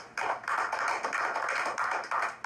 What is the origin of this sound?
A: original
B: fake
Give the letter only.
A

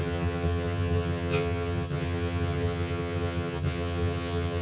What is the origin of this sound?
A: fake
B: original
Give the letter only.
A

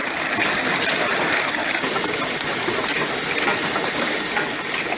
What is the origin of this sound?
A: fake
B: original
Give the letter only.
B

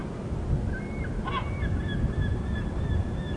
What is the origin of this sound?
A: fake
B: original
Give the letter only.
B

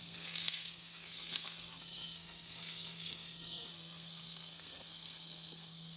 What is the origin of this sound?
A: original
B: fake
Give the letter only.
B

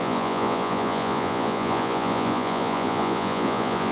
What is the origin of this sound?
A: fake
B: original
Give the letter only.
A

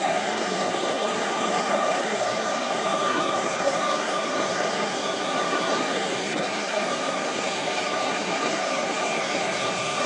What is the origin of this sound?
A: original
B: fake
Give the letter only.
B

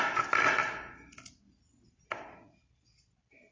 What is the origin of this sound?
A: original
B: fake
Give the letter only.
A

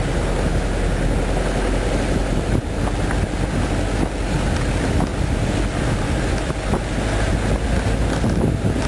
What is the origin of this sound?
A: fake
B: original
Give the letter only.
B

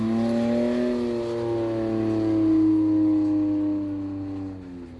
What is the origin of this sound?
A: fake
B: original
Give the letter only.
B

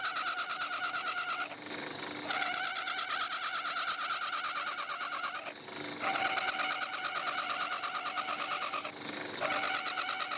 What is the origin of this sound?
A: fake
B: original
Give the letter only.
B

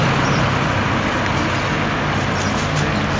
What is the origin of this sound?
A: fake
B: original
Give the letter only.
B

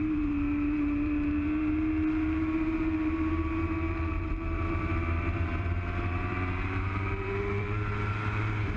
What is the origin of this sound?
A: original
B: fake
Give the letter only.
B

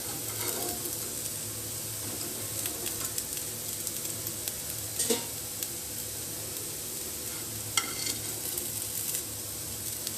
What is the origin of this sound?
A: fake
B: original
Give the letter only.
B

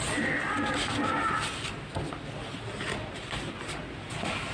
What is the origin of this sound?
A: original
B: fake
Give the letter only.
A